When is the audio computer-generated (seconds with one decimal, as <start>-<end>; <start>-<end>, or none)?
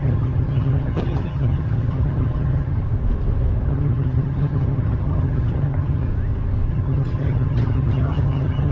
0.0-2.8; 3.7-6.1; 6.7-8.7